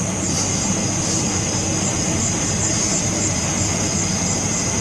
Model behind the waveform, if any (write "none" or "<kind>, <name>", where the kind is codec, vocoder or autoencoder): none